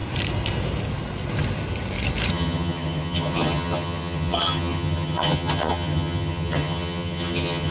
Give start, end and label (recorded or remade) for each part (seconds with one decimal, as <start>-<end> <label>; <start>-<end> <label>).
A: 0.0-2.3 recorded; 2.3-7.7 remade